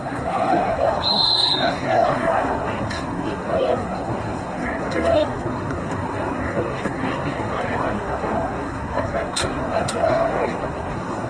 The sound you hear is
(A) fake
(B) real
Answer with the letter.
A